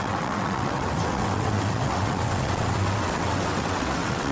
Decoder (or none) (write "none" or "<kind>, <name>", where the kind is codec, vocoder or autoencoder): vocoder, WaveNeXt